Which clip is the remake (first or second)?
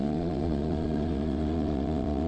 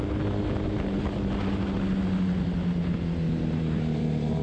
first